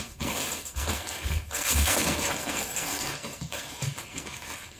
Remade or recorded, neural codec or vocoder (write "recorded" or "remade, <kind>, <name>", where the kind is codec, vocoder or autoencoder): remade, codec, SNAC